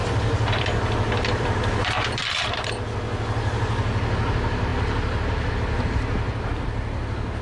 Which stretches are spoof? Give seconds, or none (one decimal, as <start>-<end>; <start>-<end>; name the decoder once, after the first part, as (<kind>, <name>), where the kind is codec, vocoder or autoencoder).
0.0-2.7 (vocoder, BigVGAN v2)